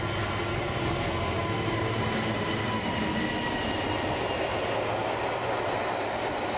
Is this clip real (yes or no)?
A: yes